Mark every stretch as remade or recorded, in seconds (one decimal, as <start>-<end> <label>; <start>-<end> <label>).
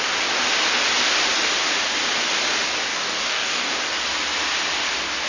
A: 0.0-2.9 recorded; 2.9-3.7 remade; 3.7-5.3 recorded